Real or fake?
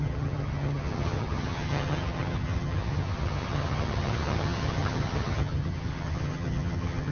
fake